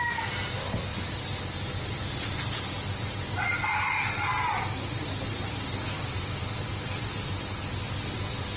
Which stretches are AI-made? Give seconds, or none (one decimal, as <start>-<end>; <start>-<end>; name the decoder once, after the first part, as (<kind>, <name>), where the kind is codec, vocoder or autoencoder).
5.3-7.2 (vocoder, BigVGAN v2)